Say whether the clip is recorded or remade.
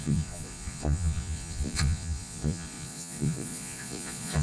remade